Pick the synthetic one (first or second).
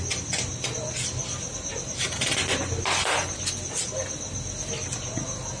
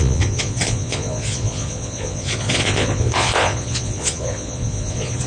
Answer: second